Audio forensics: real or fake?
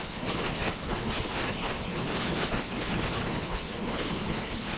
fake